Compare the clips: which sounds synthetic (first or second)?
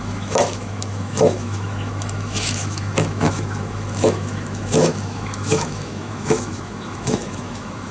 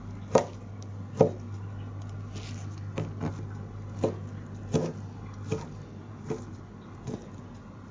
first